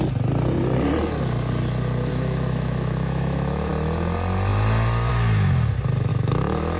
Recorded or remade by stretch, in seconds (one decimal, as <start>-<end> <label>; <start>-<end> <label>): 0.0-2.1 recorded; 2.1-3.7 remade; 3.7-6.1 recorded; 6.1-6.8 remade